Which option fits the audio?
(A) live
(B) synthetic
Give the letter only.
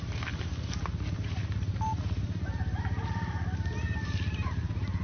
A